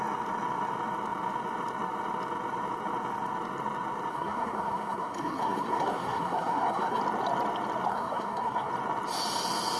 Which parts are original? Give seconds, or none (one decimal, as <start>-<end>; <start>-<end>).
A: 0.0-4.1; 7.0-7.9; 8.7-9.8